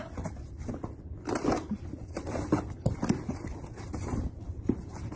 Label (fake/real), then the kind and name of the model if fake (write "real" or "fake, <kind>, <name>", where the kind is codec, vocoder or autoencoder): real